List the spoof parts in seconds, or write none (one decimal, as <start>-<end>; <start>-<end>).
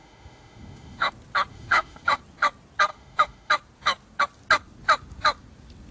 0.0-1.1; 1.5-2.2; 2.9-3.5